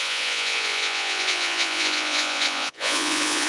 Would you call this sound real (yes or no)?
no